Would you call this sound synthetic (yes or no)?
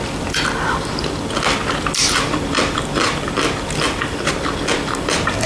no